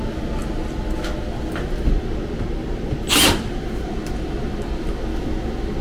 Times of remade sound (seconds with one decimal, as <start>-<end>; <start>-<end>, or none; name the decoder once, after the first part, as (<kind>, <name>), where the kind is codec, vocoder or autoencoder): none

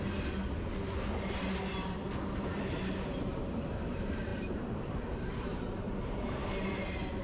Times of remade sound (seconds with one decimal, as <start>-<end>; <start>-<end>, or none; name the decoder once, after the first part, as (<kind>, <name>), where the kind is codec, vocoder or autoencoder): 4.3-6.3 (vocoder, BigVGAN v2)

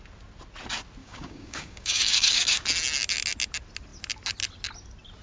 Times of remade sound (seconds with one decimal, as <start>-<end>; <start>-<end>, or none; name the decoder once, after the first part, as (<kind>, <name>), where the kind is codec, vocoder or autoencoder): 1.0-2.6 (codec, DAC)

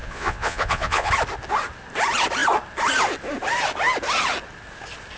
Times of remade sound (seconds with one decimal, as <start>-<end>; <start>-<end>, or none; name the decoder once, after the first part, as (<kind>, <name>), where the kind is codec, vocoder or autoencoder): 0.0-1.1 (vocoder, Vocos)

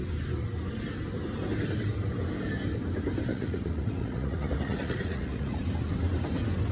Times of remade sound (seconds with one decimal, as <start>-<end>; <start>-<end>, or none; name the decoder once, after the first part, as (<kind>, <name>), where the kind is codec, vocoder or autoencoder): 3.3-5.6 (vocoder, Vocos)

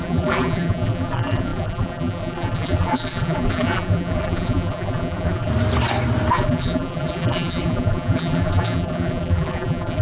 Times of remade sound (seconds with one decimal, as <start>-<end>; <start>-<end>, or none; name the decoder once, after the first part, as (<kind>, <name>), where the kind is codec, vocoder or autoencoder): 0.0-5.5 (vocoder, BigVGAN v2); 6.3-10.0

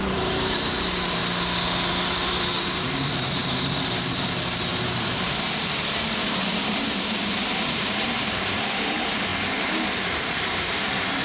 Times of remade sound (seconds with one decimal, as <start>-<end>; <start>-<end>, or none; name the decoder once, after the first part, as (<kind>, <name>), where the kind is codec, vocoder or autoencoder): 0.0-1.2 (vocoder, BigVGAN v2); 1.9-3.4; 4.8-9.3; 9.9-11.2